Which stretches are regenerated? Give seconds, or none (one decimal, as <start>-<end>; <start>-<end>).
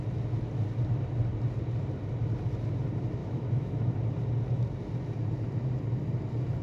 3.2-3.9